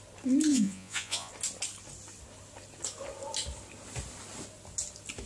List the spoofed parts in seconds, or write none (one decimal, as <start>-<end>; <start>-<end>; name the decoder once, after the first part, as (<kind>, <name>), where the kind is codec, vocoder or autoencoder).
0.5-1.3 (vocoder, Vocos)